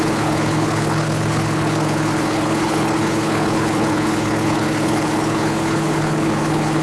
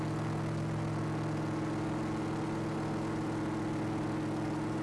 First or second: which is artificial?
first